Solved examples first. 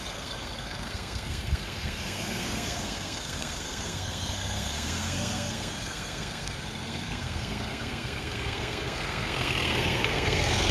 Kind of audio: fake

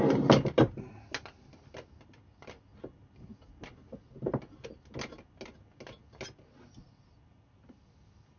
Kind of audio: real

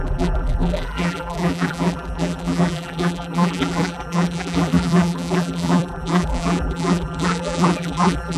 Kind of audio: fake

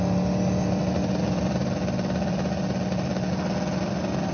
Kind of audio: real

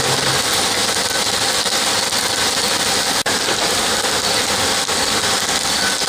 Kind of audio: real